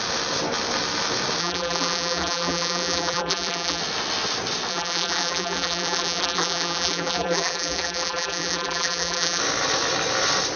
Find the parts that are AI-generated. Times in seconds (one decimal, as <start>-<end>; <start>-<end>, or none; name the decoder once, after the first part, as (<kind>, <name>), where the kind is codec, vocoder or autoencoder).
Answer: 1.4-3.8 (vocoder, BigVGAN v2); 4.7-9.4